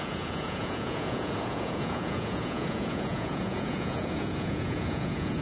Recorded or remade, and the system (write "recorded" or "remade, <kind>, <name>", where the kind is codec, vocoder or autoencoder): remade, vocoder, Vocos